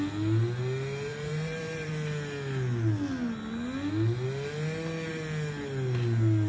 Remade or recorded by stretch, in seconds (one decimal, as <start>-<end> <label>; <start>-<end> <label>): 0.0-1.1 recorded; 1.1-1.9 remade; 1.9-6.5 recorded